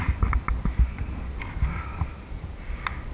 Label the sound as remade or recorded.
recorded